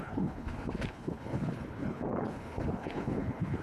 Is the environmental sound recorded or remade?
remade